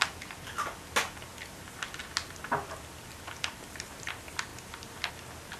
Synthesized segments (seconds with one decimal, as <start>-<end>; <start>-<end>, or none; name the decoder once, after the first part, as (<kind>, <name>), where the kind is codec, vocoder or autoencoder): none